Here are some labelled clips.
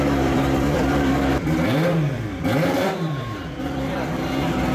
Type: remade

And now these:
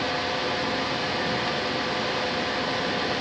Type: recorded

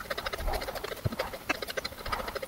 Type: recorded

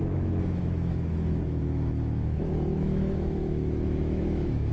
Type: remade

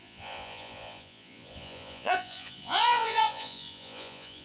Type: remade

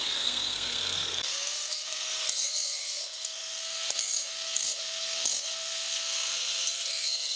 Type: remade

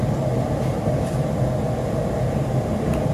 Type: remade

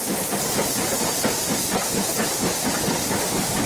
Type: recorded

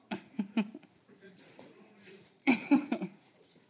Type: remade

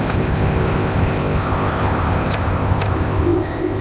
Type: remade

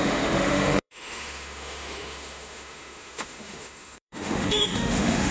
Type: remade